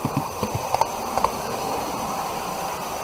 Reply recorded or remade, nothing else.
remade